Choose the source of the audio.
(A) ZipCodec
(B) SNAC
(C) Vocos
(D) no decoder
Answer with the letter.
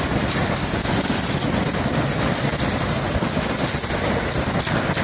D